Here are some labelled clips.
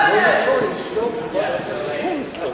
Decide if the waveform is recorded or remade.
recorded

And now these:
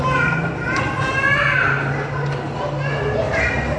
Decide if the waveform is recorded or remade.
recorded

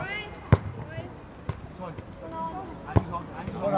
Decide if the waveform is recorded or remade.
recorded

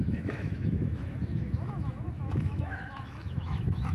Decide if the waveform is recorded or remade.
remade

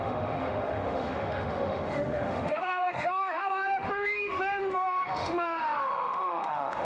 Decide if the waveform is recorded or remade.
remade